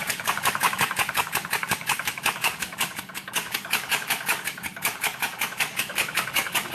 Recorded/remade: remade